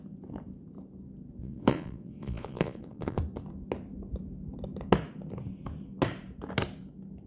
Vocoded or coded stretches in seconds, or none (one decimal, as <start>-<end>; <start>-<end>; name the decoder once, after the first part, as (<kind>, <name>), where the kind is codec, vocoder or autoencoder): 1.4-3.2 (vocoder, Vocos)